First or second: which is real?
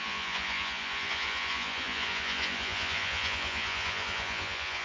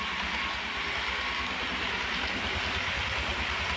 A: second